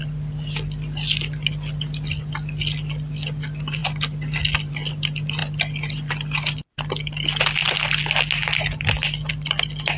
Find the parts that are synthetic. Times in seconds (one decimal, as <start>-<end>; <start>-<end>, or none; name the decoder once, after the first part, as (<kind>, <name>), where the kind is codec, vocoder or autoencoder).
none